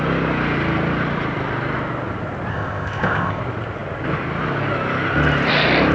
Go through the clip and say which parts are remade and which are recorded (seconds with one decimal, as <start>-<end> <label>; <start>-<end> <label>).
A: 0.0-2.5 recorded; 2.5-3.4 remade; 3.4-5.9 recorded